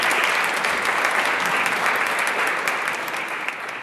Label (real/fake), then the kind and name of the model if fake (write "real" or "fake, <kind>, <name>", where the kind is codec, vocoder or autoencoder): real